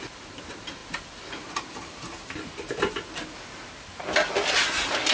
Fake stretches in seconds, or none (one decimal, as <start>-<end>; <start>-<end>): none